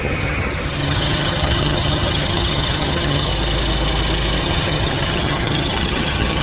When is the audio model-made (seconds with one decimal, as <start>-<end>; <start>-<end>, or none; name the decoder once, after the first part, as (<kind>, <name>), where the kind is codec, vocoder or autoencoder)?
0.0-3.3 (vocoder, HiFi-GAN); 4.4-6.4